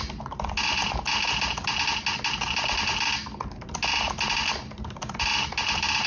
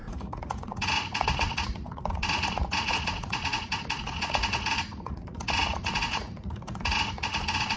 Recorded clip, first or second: first